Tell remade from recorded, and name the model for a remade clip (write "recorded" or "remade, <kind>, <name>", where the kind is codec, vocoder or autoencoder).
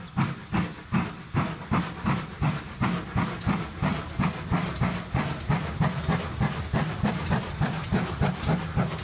recorded